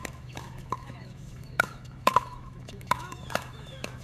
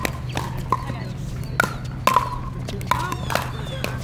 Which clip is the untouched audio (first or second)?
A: second